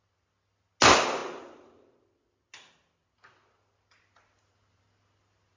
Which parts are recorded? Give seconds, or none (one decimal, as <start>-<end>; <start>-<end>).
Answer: 0.0-5.6